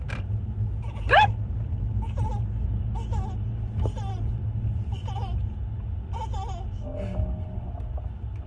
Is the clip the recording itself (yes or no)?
yes